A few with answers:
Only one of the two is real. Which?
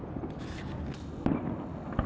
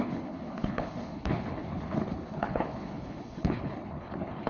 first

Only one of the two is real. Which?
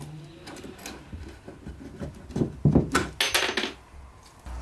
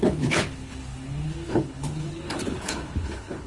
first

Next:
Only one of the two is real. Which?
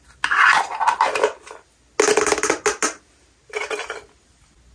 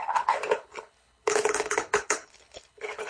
first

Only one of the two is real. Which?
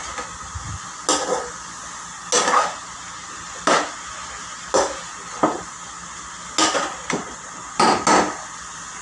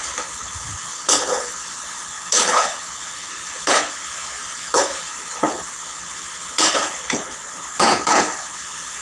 first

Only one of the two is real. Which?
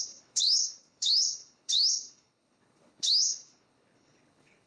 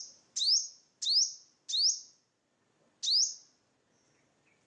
second